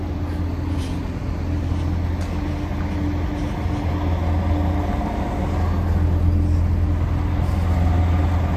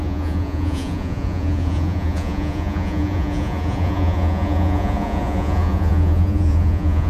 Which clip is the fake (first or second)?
second